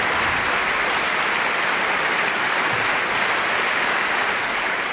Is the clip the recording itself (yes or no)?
yes